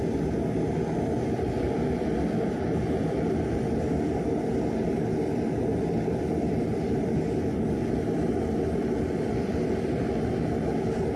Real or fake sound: real